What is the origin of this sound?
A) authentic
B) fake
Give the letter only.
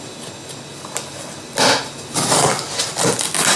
A